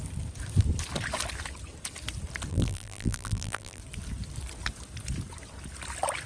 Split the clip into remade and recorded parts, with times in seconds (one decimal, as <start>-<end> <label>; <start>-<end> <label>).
0.0-2.5 recorded; 2.5-3.8 remade; 3.8-6.3 recorded